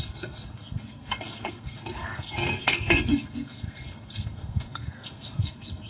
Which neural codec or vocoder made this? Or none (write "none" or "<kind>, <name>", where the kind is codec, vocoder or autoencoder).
codec, SNAC